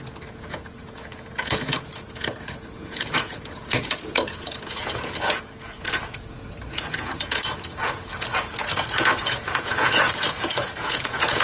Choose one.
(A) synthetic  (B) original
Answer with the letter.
A